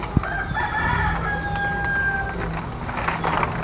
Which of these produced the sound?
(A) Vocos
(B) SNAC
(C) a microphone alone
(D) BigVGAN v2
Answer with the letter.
C